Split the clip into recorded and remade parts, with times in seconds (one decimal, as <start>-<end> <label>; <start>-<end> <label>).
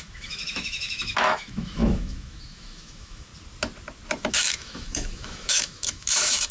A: 0.0-3.3 remade; 3.3-4.3 recorded; 4.3-6.5 remade